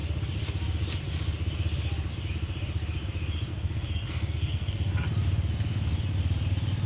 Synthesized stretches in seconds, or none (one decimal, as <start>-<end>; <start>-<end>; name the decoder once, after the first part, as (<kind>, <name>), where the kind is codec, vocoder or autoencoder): 3.5-4.9 (codec, SNAC)